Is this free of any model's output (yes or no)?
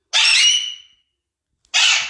yes